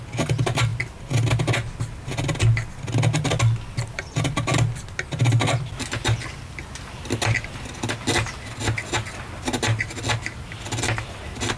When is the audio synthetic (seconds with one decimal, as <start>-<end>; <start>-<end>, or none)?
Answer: none